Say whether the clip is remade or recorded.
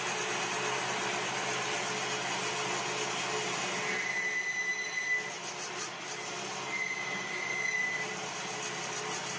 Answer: recorded